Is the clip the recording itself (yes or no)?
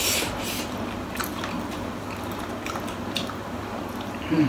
yes